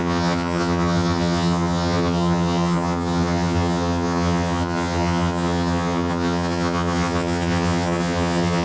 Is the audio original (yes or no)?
no